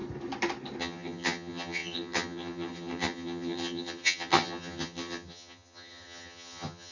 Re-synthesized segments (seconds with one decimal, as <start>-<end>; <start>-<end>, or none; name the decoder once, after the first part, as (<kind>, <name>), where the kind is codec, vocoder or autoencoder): 0.8-6.9 (vocoder, HiFi-GAN)

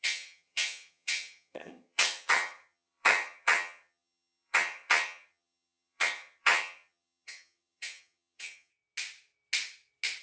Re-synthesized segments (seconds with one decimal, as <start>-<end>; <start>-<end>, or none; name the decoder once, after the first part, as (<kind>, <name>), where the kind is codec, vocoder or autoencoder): 0.0-8.7 (vocoder, HiFi-GAN)